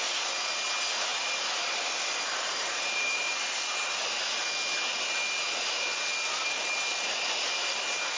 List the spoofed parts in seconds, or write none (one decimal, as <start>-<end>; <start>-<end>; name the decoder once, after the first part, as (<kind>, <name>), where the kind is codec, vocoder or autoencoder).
1.1-3.3 (vocoder, BigVGAN v2)